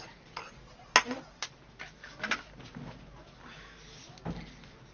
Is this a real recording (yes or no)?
yes